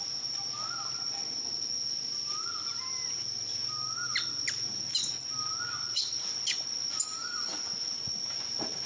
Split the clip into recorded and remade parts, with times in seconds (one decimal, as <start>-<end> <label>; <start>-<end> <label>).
0.0-8.9 recorded

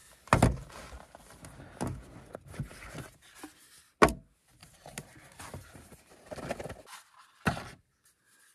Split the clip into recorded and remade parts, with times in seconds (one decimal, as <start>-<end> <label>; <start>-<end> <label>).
0.0-4.6 recorded; 4.6-6.1 remade; 6.1-8.5 recorded

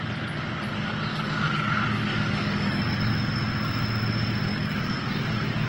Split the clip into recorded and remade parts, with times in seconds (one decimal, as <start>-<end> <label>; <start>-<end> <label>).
0.0-1.1 recorded; 1.1-3.0 remade; 3.0-4.5 recorded; 4.5-5.7 remade